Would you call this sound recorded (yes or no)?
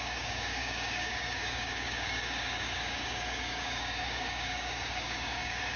no